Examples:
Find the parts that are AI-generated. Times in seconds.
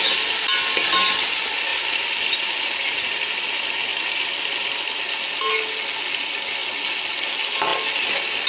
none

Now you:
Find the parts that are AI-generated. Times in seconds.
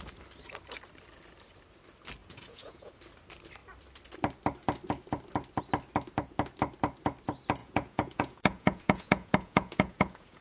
2.2-2.9 (vocoder, Vocos); 7.6-10.4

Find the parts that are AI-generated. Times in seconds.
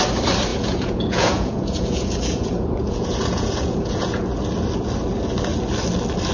0.5-4.3 (vocoder, Vocos)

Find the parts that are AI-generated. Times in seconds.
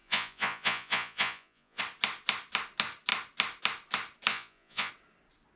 0.0-1.8 (vocoder, Vocos); 4.3-4.9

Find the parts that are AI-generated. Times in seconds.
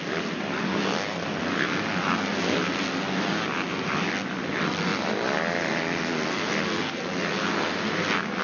none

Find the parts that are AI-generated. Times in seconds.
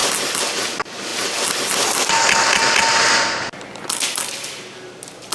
none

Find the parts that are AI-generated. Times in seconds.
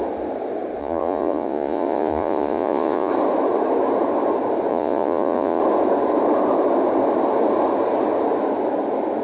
0.8-3.1 (vocoder, Vocos); 4.7-5.6